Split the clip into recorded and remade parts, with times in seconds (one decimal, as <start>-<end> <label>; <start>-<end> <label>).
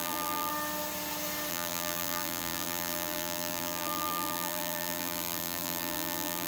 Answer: 0.0-0.5 remade; 0.5-1.5 recorded; 1.5-6.5 remade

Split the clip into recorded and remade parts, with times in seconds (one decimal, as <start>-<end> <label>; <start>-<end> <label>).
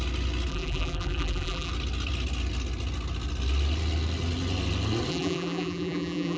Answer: 0.0-0.5 recorded; 0.5-1.7 remade; 1.7-5.1 recorded; 5.1-6.4 remade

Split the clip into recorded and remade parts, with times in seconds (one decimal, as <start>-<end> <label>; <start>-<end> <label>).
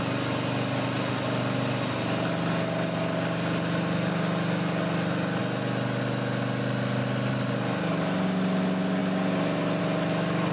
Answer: 0.0-10.5 recorded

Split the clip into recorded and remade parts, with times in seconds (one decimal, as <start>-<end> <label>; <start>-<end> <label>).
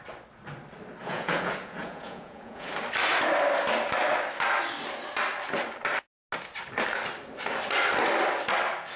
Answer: 0.0-1.0 recorded; 1.0-2.7 remade; 2.7-9.0 recorded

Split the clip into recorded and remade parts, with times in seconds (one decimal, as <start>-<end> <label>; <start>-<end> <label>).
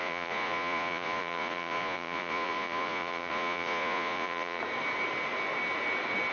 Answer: 0.0-4.6 remade; 4.6-6.3 recorded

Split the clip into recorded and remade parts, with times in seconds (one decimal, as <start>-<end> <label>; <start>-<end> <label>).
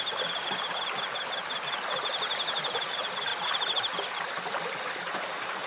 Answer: 0.0-5.7 recorded